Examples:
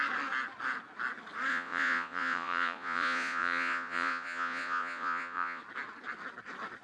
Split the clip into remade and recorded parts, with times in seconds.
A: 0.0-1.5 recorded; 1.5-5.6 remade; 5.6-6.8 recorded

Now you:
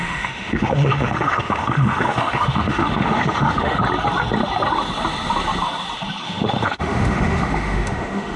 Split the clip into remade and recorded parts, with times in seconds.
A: 0.0-3.8 remade; 3.8-6.2 recorded; 6.2-8.4 remade

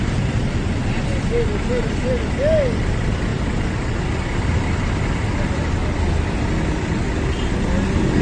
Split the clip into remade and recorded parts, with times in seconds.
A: 0.0-8.2 recorded

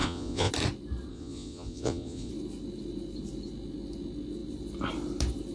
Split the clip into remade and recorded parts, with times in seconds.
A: 0.0-0.5 remade; 0.5-1.1 recorded; 1.1-2.3 remade; 2.3-5.5 recorded